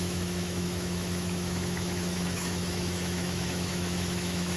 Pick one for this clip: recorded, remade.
remade